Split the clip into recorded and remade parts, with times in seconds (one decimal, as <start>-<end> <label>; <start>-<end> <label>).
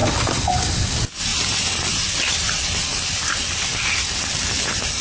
0.0-5.0 recorded